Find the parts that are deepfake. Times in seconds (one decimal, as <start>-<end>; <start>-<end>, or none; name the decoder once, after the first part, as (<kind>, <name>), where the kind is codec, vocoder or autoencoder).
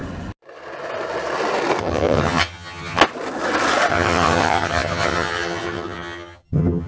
1.8-3.0 (vocoder, HiFi-GAN); 3.9-6.9